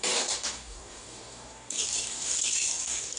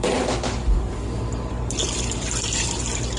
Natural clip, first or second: second